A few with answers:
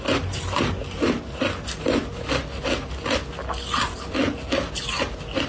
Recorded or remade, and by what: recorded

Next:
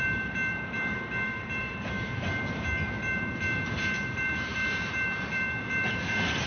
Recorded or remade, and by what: remade, vocoder, BigVGAN v2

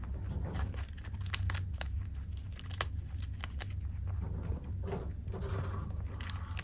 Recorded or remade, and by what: recorded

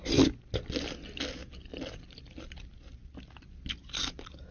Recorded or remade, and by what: recorded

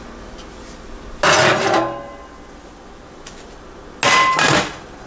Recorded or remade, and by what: recorded